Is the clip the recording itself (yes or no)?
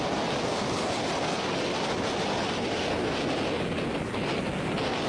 yes